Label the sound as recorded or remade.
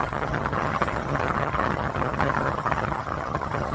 remade